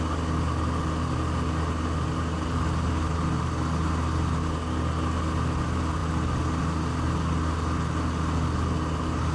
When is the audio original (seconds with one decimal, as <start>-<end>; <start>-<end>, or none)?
0.0-9.3